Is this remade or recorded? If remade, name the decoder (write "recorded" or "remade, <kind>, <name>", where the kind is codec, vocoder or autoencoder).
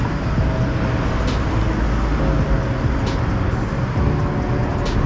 recorded